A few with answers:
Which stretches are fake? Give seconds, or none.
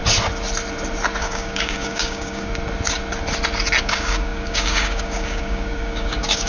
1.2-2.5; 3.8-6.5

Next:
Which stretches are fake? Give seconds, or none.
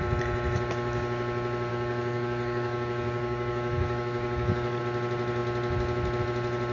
1.7-4.8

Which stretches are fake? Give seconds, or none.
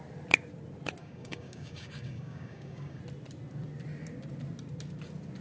1.0-3.0